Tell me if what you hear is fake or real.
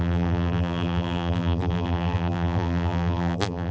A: fake